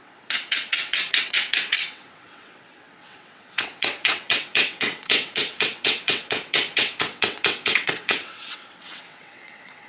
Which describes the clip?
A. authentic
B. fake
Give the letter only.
B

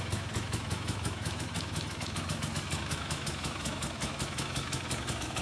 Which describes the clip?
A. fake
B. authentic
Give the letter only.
A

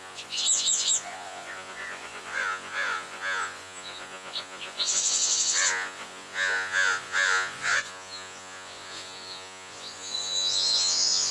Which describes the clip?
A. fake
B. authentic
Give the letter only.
A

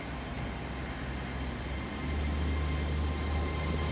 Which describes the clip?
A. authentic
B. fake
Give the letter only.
A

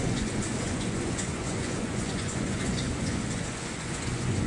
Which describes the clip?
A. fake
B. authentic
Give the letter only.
A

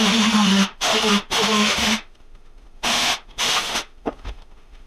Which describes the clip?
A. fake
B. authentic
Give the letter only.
A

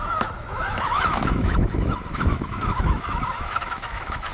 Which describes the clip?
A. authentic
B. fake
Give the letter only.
B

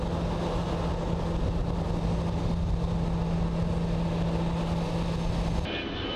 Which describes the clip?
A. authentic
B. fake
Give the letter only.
A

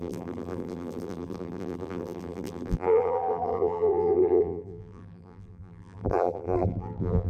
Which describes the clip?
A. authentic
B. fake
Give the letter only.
B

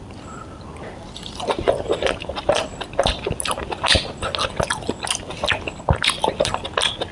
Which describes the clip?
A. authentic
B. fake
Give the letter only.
A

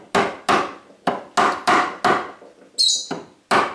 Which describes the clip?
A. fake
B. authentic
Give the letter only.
B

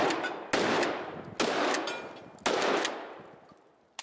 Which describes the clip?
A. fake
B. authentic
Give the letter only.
B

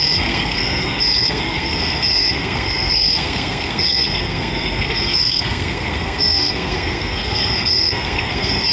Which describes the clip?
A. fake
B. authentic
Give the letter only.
A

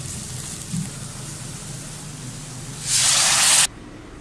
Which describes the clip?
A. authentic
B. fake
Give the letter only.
A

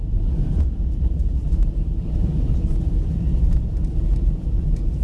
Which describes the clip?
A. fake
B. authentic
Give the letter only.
A